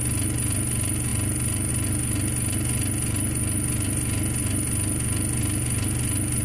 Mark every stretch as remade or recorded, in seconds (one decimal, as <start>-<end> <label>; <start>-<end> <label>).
0.0-6.4 recorded